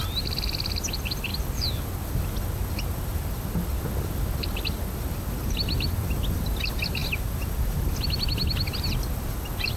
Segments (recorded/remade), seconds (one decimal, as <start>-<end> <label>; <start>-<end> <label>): 0.0-9.8 recorded